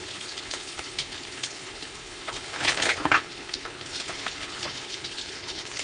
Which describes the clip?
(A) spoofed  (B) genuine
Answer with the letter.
A